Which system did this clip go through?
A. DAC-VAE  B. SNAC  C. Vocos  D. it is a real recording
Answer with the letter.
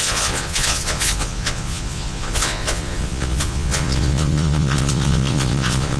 C